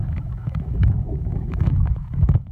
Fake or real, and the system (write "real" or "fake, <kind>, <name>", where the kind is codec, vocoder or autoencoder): fake, autoencoder, DAC-VAE